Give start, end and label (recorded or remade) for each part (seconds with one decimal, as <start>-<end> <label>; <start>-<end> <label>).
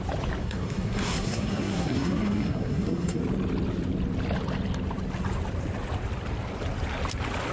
0.0-0.4 recorded; 0.4-3.2 remade; 3.2-7.5 recorded